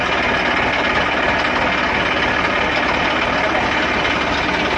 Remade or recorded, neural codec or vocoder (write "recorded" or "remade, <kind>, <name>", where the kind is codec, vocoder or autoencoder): recorded